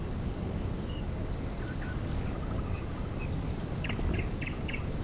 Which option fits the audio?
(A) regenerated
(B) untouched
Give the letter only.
A